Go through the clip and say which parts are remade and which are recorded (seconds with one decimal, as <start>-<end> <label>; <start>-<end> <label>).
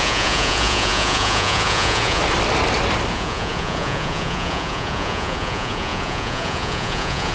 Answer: 0.0-2.2 remade; 2.2-3.1 recorded; 3.1-7.3 remade